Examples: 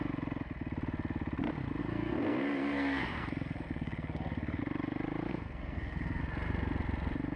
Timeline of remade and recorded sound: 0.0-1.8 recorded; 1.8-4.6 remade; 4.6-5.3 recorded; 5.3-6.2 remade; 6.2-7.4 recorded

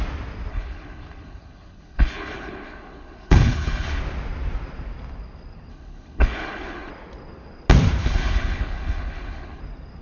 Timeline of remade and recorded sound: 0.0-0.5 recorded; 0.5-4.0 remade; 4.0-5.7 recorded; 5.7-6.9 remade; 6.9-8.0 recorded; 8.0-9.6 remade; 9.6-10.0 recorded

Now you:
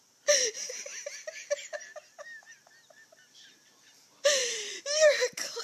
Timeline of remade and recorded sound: 0.0-4.4 recorded; 4.4-5.6 remade

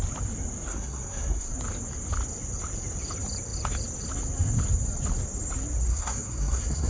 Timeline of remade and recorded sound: 0.0-0.7 recorded; 0.7-1.5 remade; 1.5-5.9 recorded; 5.9-6.9 remade

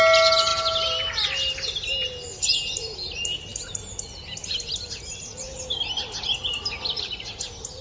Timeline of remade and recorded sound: 0.0-7.8 recorded

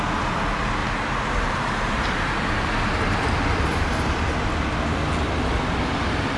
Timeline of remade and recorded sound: 0.0-0.8 recorded; 0.8-3.3 remade; 3.3-6.4 recorded